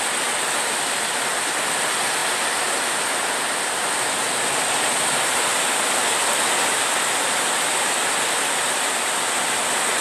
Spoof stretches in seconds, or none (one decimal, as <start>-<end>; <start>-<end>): none